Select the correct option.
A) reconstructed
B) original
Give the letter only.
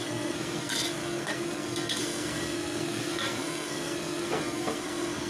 A